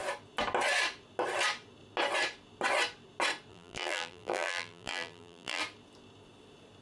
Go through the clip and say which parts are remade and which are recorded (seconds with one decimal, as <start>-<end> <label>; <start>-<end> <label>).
0.0-3.5 recorded; 3.5-5.6 remade; 5.6-6.8 recorded